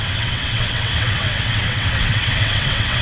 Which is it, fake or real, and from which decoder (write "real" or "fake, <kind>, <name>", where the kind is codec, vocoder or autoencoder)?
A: fake, vocoder, WaveNeXt